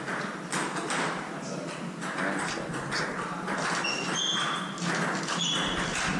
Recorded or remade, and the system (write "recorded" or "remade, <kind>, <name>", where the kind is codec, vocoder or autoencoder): recorded